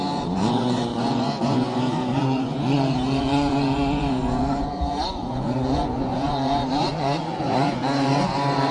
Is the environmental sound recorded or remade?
remade